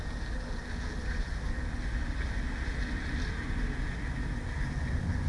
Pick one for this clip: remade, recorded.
recorded